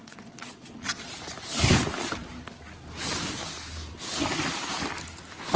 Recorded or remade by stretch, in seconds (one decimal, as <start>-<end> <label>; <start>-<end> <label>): 0.0-1.1 remade; 1.1-5.6 recorded

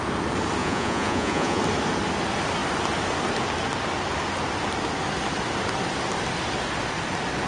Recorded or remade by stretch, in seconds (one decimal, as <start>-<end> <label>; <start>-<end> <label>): 0.0-0.6 recorded; 0.6-1.6 remade; 1.6-7.5 recorded